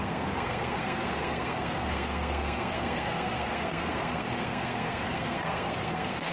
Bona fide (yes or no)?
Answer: no